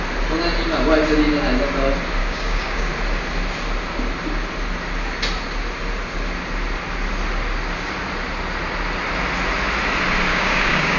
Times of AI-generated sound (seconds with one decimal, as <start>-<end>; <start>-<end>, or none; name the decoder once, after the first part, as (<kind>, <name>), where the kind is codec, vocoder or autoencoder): 2.2-2.9 (codec, DAC); 10.3-11.0